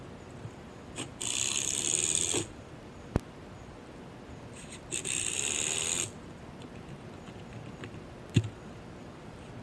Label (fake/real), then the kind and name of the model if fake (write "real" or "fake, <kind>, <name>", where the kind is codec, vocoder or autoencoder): real